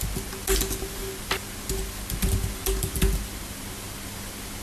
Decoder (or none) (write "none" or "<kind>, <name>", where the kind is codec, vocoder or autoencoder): none